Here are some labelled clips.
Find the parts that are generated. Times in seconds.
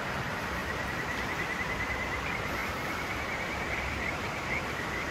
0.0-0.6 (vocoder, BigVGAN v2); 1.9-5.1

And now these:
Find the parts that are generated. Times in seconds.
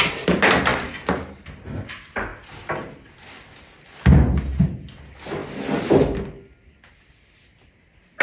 none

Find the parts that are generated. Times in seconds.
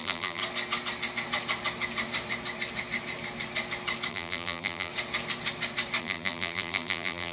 0.0-0.4 (vocoder, BigVGAN v2); 4.1-4.9; 6.0-7.3